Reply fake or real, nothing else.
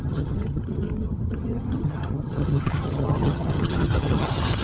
fake